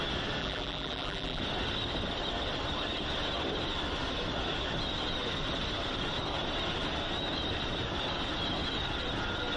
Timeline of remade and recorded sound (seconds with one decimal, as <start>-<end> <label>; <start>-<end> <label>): 0.0-0.4 recorded; 0.4-1.4 remade; 1.4-9.6 recorded